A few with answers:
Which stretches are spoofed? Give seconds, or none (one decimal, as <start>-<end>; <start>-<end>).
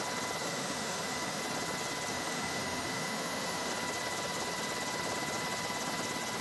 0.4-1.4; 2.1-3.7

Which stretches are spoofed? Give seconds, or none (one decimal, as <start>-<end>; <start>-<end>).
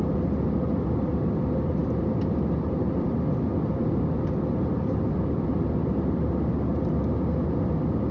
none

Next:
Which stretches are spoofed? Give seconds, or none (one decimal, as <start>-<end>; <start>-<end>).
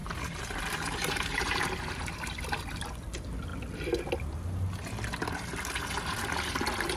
0.0-1.6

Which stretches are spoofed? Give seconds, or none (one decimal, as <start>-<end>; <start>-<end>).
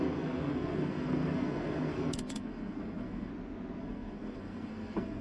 0.0-3.3; 3.8-5.2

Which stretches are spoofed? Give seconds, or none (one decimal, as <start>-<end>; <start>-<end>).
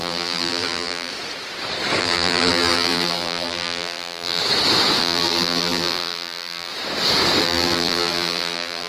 0.0-1.1; 2.0-4.4; 5.0-6.7; 7.4-8.9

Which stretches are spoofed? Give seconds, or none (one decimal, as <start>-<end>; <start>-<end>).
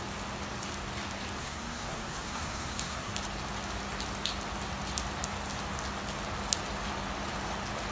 1.4-3.1